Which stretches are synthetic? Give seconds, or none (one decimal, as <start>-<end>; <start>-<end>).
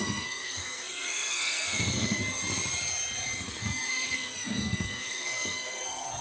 0.0-2.2; 3.5-6.2